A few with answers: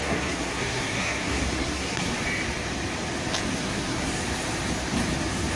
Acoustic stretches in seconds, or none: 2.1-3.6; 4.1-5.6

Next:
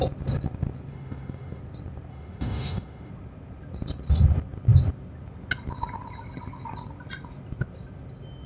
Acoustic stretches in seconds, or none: 0.0-0.9; 1.6-2.1; 3.1-8.5

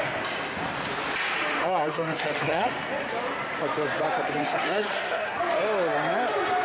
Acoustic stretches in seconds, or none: 0.0-1.6; 2.7-4.4; 5.4-6.6

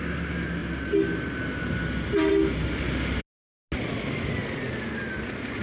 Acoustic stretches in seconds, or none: 0.0-5.6

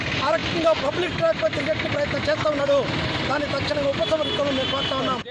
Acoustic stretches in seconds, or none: 0.0-5.3